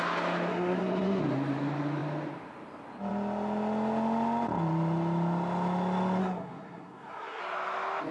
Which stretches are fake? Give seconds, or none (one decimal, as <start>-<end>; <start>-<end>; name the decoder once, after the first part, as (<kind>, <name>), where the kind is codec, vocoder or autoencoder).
0.5-1.2 (codec, SNAC); 6.2-7.4